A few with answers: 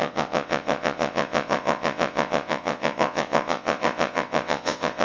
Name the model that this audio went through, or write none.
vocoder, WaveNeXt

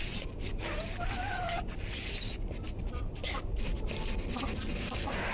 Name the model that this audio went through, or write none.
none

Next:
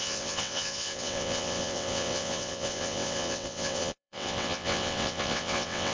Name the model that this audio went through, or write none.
vocoder, WaveNeXt